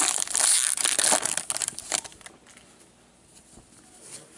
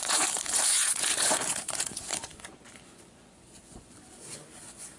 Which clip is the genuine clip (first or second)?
first